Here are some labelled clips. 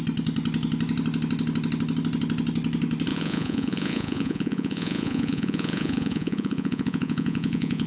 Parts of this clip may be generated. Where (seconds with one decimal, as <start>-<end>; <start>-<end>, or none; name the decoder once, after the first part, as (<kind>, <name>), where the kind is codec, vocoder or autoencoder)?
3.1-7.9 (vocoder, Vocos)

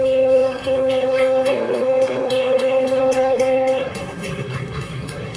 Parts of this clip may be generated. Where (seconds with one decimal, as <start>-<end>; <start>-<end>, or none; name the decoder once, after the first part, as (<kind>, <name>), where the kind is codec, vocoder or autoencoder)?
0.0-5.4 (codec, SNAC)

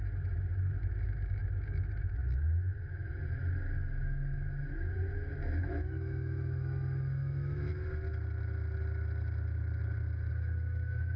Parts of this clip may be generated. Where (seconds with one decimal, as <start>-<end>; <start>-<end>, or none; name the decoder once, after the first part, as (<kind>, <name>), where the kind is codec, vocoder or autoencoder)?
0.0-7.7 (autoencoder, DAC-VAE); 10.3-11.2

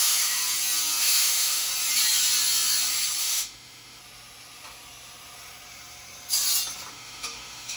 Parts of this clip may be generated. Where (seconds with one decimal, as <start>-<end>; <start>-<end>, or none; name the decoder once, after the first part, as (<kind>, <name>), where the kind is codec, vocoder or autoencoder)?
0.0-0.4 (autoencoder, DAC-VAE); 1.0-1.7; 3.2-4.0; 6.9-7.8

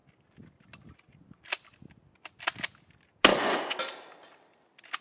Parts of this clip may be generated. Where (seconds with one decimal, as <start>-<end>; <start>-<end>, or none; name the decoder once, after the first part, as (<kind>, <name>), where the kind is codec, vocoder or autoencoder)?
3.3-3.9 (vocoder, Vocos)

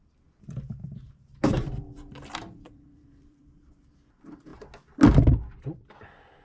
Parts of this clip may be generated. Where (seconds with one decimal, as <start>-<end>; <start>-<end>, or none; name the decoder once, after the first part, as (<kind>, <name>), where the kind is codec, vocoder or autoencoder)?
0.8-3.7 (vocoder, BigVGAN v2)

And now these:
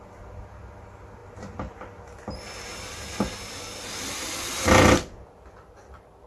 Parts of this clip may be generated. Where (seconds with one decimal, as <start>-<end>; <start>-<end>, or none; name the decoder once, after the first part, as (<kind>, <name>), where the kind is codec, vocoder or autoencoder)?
none